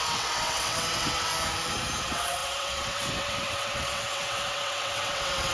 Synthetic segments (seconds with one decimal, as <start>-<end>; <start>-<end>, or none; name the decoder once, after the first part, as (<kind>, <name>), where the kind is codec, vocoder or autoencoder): 0.0-1.3 (vocoder, WaveNeXt); 2.0-5.5